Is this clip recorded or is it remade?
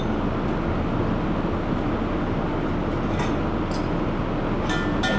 recorded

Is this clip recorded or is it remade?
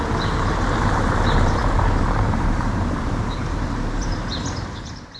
remade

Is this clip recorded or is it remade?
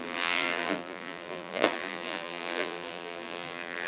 remade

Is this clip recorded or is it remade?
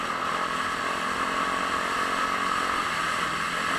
recorded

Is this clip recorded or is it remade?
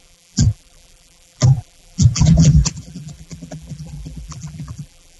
remade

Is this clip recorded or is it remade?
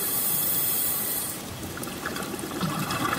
remade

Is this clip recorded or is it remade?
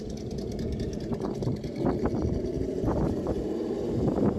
remade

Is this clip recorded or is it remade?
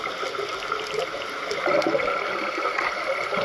recorded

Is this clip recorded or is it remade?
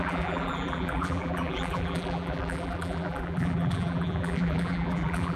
remade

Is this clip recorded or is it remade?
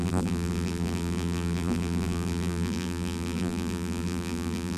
remade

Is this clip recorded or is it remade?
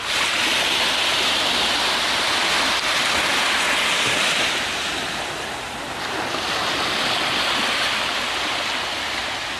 recorded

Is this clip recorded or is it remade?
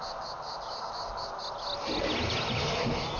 recorded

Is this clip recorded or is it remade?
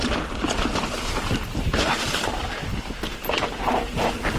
remade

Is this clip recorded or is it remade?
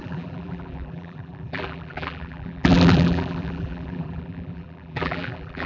remade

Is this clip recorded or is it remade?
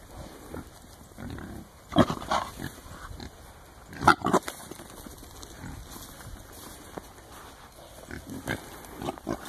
recorded